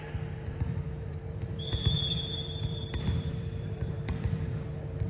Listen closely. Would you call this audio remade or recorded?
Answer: remade